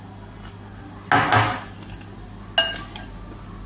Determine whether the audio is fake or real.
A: real